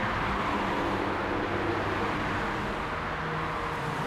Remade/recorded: recorded